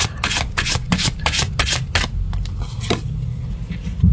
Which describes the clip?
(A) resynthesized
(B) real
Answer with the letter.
B